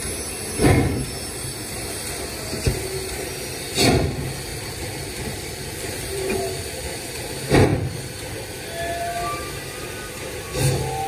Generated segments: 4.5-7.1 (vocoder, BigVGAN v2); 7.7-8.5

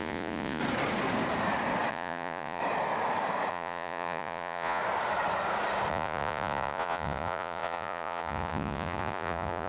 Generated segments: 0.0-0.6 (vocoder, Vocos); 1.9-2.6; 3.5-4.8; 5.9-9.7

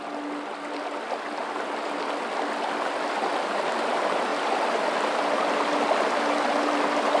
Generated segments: none

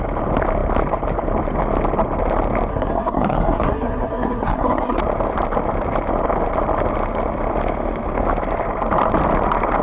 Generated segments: 2.7-5.0 (codec, SNAC)

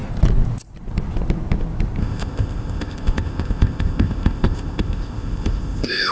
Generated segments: 2.0-6.1 (codec, ZipCodec)